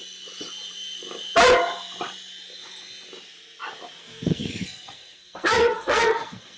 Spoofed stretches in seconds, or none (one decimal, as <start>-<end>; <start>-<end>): 4.0-6.6